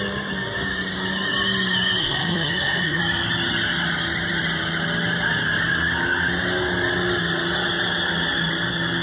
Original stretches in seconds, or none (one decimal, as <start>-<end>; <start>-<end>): 0.0-2.0; 3.0-9.0

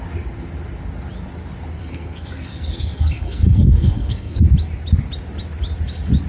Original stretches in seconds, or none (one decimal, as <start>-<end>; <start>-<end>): 0.0-1.8; 4.4-6.3

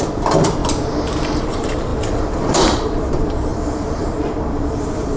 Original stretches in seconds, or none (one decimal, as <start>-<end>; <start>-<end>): 0.6-1.4

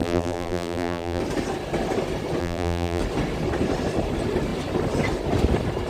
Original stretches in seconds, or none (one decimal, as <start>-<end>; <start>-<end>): 1.2-2.4; 3.0-5.9

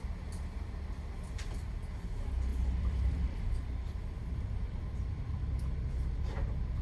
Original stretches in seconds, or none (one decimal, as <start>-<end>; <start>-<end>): 0.0-2.5; 5.9-6.8

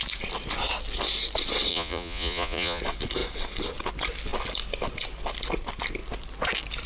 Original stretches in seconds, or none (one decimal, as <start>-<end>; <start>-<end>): 0.0-1.7; 2.8-6.9

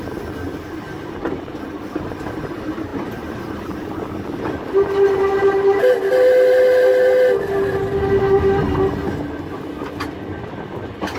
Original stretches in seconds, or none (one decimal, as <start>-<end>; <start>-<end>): 0.0-11.2